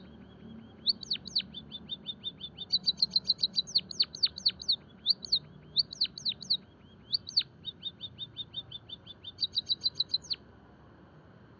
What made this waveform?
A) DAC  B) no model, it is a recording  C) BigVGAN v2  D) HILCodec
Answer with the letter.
B